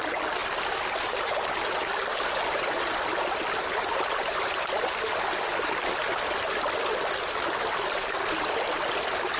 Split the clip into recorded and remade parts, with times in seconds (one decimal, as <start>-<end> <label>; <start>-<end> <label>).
0.0-9.4 recorded